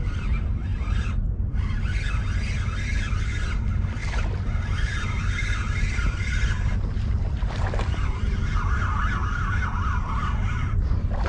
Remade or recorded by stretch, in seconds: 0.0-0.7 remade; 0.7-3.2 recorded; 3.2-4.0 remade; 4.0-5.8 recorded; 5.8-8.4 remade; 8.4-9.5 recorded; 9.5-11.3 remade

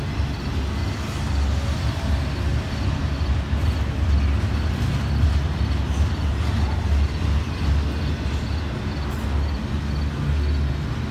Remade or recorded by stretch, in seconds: 0.0-0.8 recorded; 0.8-3.0 remade; 3.0-11.1 recorded

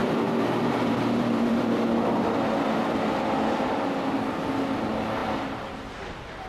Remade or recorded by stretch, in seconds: 0.0-3.9 remade; 3.9-6.5 recorded

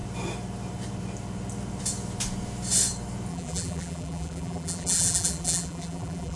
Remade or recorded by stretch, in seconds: 0.0-3.3 recorded; 3.3-6.4 remade

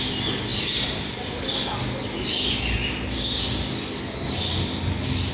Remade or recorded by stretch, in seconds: 0.0-5.3 recorded